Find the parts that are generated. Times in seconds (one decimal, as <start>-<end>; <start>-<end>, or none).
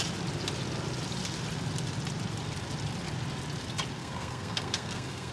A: 4.0-5.3